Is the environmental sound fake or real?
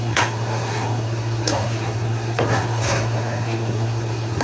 fake